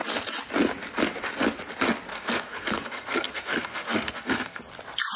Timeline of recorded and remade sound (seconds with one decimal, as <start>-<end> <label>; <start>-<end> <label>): 0.0-2.1 recorded; 2.1-4.6 remade; 4.6-5.2 recorded